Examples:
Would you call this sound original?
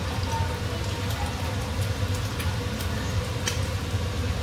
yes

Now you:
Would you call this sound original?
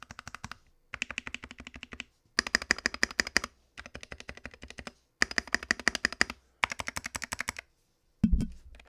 yes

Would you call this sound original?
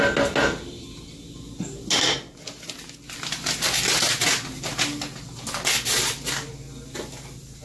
yes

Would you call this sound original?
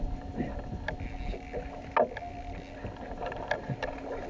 yes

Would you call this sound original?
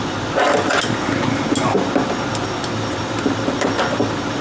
yes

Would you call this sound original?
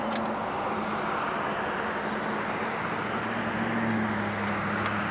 yes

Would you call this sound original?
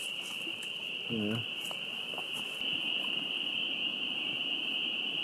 yes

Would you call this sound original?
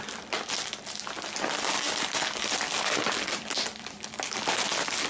yes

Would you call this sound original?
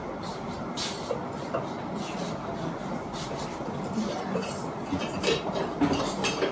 no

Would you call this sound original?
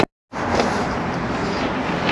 yes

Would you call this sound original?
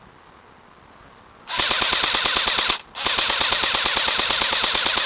yes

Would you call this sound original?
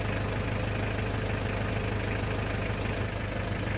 yes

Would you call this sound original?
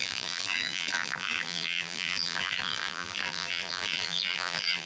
no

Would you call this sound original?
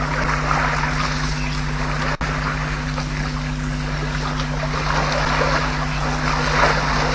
yes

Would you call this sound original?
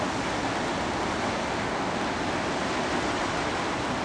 yes